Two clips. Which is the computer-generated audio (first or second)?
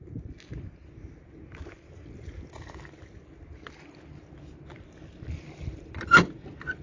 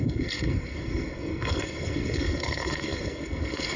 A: second